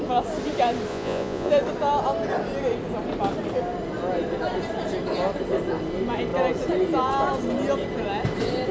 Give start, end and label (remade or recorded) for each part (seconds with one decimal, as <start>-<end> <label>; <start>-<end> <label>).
0.0-0.9 recorded; 0.9-1.5 remade; 1.5-8.7 recorded